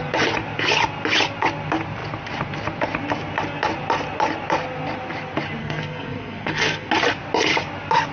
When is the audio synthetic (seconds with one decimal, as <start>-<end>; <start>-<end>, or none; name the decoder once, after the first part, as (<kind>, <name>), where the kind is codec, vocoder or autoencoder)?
5.6-6.9 (codec, SNAC)